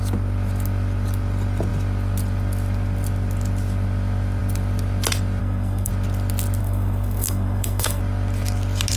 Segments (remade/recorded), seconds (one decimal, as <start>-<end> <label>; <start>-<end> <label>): 0.0-5.4 recorded; 5.4-5.9 remade; 5.9-6.6 recorded; 6.6-8.0 remade; 8.0-9.0 recorded